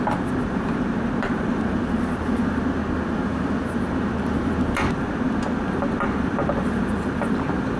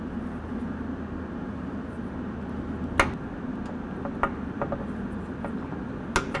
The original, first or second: second